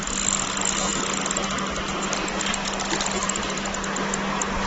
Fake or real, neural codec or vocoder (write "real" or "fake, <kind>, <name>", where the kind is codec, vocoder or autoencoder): real